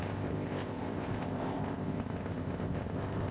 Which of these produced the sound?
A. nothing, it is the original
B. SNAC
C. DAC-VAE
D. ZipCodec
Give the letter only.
D